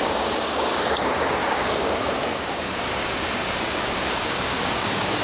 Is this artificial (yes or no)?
yes